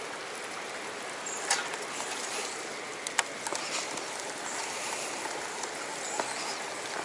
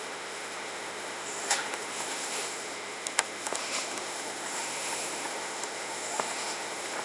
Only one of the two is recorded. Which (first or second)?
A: first